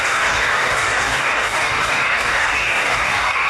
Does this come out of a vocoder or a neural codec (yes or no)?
yes